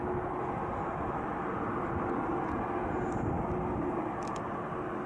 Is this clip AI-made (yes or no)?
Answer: no